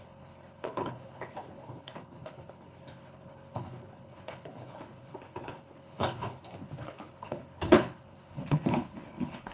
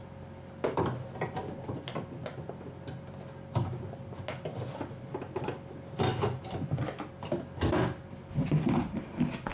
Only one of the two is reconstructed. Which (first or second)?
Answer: first